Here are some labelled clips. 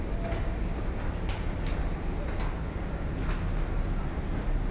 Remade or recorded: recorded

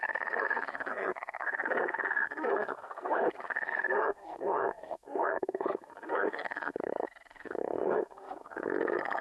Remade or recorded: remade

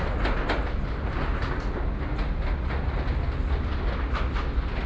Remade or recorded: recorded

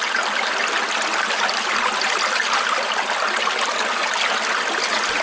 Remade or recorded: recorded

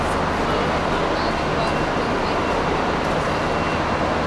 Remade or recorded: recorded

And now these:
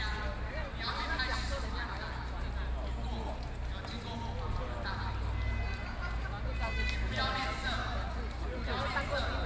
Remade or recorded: recorded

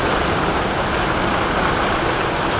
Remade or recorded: recorded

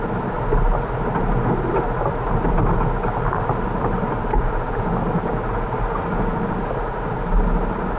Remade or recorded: recorded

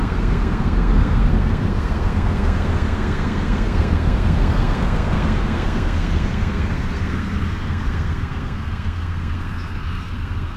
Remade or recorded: remade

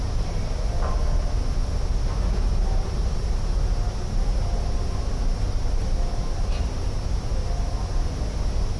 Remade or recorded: recorded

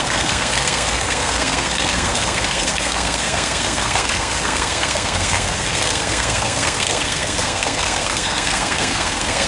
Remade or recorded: remade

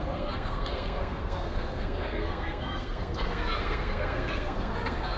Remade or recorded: remade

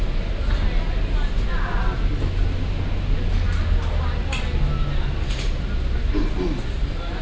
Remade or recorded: recorded